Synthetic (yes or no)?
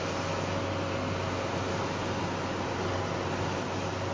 no